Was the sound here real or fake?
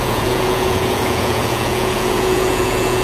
fake